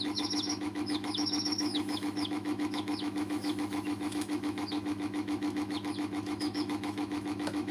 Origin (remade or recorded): remade